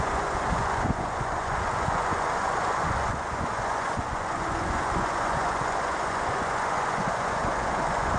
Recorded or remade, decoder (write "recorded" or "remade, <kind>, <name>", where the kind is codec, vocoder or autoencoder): remade, vocoder, Vocos